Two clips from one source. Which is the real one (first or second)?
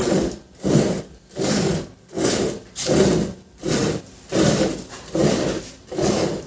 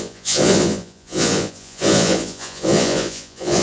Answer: first